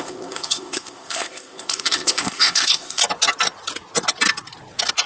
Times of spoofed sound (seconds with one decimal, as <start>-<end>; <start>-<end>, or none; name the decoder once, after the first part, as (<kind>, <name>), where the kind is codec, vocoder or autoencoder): 0.0-3.0 (codec, ZipCodec)